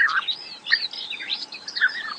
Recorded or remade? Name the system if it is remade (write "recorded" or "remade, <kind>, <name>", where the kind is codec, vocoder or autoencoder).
recorded